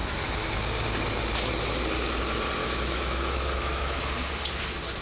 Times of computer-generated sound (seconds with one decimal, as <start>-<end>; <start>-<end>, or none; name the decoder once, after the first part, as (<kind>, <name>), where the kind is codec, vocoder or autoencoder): 0.0-0.5 (autoencoder, DAC-VAE); 2.6-4.0